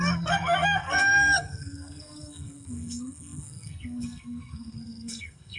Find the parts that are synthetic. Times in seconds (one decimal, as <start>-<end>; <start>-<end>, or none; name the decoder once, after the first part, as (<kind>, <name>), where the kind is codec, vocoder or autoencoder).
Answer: 0.0-5.6 (codec, SNAC)